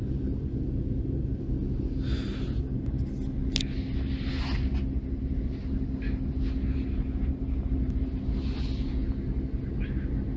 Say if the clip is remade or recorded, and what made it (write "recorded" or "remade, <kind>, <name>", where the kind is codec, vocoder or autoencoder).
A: recorded